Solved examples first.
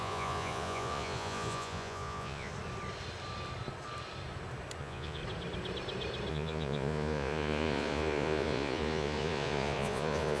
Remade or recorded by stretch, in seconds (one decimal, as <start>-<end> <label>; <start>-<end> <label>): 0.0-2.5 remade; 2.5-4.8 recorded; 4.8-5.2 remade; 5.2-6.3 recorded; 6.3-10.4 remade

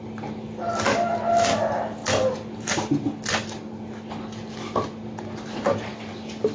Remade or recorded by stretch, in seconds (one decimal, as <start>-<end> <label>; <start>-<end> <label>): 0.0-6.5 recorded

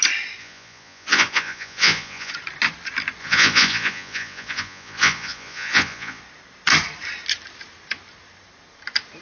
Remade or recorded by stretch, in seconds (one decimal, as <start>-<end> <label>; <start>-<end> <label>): 0.0-0.4 recorded; 0.4-2.3 remade; 2.3-3.2 recorded; 3.2-6.2 remade; 6.2-9.2 recorded

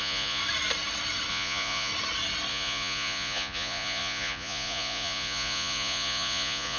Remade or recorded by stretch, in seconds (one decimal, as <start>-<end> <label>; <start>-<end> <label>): 0.0-0.4 remade; 0.4-1.3 recorded; 1.3-1.9 remade; 1.9-2.5 recorded; 2.5-6.8 remade